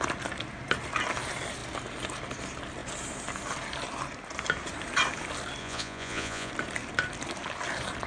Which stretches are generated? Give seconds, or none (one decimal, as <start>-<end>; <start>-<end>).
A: 5.6-6.5